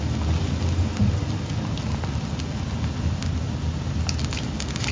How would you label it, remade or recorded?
recorded